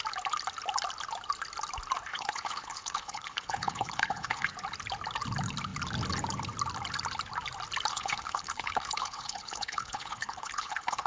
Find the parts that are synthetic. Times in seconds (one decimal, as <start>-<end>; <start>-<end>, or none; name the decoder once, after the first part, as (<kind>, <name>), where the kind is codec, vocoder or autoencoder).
2.1-4.5 (codec, HILCodec); 7.9-11.1